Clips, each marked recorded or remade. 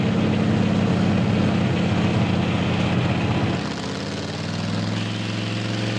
recorded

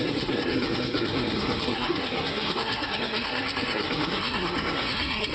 remade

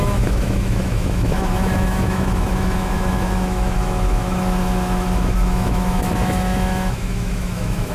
remade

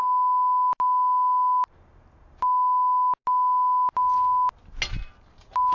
recorded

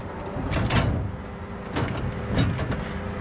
recorded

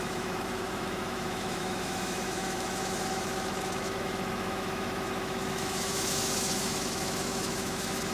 remade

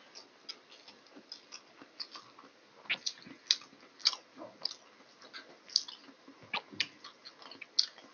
recorded